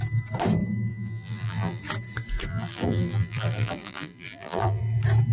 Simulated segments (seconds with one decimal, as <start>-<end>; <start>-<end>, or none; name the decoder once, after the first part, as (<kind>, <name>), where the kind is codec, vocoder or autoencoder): 0.9-1.8 (vocoder, BigVGAN v2); 2.5-4.8